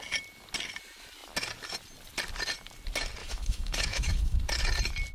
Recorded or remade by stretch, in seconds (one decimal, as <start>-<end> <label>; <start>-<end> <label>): 0.0-3.2 recorded; 3.2-4.4 remade; 4.4-5.1 recorded

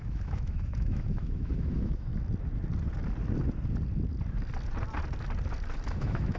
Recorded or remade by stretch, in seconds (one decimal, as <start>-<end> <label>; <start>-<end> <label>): 0.0-2.1 remade; 2.1-5.9 recorded; 5.9-6.4 remade

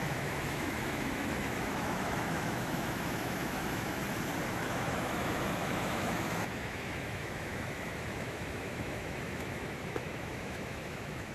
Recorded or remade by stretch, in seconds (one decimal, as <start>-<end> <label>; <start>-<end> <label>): 0.0-4.0 remade; 4.0-4.5 recorded; 4.5-11.3 remade

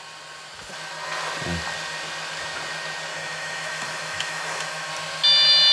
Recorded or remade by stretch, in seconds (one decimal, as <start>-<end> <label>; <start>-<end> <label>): 0.0-3.1 recorded; 3.1-4.9 remade; 4.9-5.7 recorded